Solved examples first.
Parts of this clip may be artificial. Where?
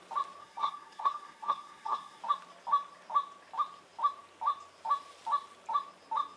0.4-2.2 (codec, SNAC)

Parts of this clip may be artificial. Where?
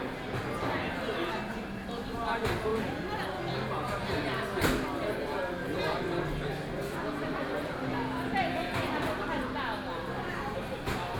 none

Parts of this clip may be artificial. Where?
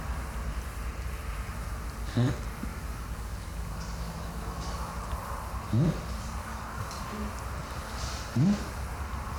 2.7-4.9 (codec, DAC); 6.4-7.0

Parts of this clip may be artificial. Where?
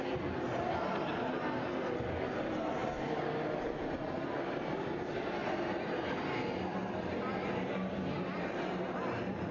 5.4-6.3 (vocoder, BigVGAN v2); 6.7-7.3